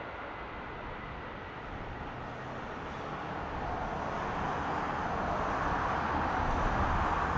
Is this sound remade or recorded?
recorded